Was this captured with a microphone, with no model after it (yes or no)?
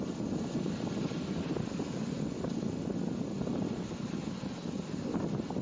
yes